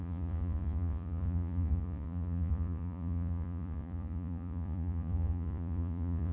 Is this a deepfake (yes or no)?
yes